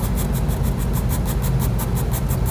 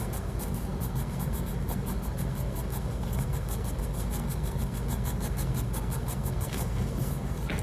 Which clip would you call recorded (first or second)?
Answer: first